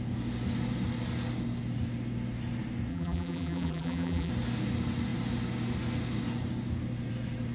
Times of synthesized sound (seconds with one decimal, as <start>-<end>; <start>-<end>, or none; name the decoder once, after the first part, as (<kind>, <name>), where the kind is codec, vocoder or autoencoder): 2.9-4.3 (vocoder, BigVGAN v2)